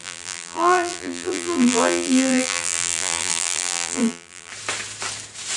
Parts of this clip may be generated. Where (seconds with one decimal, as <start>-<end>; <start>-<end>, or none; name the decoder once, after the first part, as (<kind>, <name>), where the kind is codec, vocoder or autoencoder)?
0.0-4.5 (vocoder, BigVGAN v2)